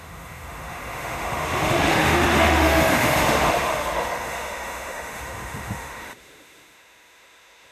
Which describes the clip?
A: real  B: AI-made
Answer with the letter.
B